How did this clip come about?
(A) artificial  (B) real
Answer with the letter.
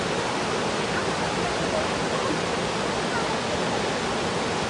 B